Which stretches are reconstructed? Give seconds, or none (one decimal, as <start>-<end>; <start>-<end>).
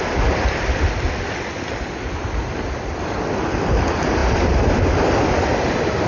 none